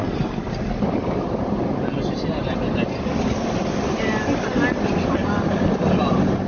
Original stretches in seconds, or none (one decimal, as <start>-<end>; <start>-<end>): 0.0-6.5